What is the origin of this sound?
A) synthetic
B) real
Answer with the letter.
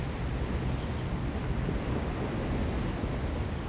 B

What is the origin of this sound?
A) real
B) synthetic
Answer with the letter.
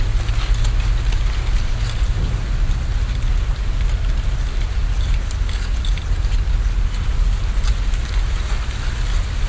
A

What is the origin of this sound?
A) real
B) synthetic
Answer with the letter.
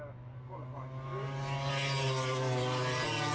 A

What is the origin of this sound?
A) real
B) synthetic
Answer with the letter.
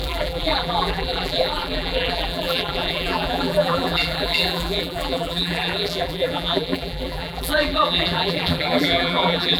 B